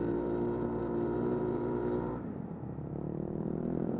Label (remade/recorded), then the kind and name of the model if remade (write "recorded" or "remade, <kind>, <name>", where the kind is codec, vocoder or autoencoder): remade, vocoder, BigVGAN v2